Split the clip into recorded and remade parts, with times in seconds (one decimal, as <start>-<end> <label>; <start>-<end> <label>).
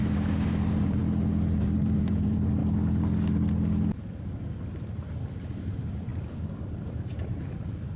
0.0-1.0 remade; 1.0-1.6 recorded; 1.6-2.6 remade; 2.6-5.6 recorded; 5.6-6.1 remade; 6.1-6.6 recorded; 6.6-8.0 remade